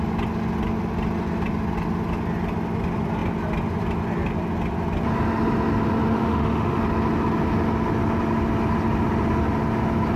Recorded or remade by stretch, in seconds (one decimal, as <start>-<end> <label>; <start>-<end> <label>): 0.0-6.1 recorded; 6.1-6.8 remade; 6.8-10.2 recorded